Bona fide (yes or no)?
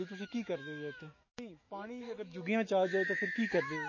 no